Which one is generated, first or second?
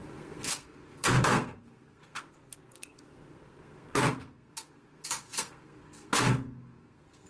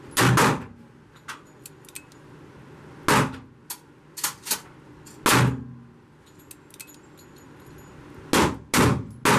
first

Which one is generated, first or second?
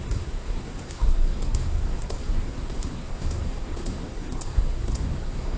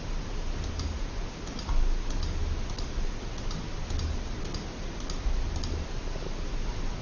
first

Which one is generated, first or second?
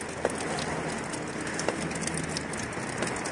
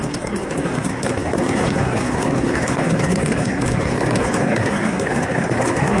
second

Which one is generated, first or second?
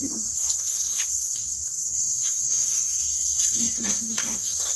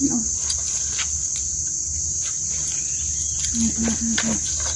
first